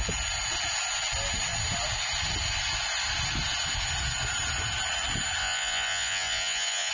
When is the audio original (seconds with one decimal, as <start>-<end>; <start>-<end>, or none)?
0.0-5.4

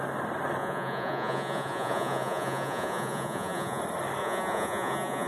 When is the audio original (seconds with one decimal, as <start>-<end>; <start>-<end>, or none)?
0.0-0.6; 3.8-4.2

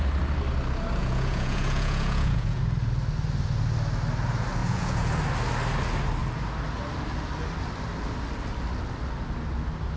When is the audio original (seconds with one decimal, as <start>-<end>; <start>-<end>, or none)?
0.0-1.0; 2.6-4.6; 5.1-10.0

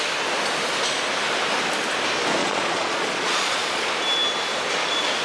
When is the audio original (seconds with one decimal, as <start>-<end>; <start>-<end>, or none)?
0.0-2.4; 3.9-5.2

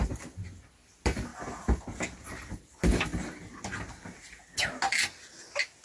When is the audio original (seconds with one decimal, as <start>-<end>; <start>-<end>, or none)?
0.0-5.8

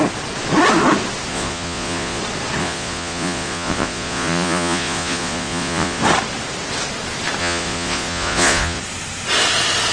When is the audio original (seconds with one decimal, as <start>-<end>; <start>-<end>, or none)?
0.0-1.3; 2.2-2.6; 6.0-7.4; 8.8-9.9

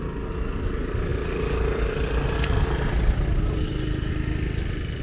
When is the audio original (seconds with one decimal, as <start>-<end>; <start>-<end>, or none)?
0.0-5.0

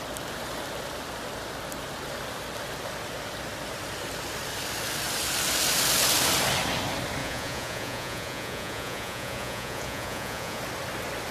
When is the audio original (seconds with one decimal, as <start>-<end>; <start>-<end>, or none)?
0.0-7.2; 10.6-11.3